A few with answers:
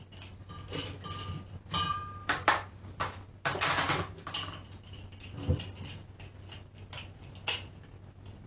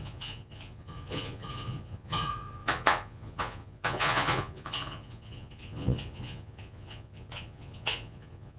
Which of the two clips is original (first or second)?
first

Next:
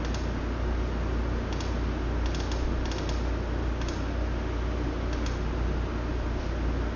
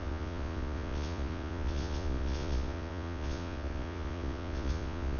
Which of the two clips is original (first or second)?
first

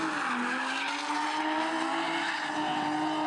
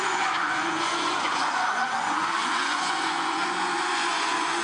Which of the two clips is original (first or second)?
first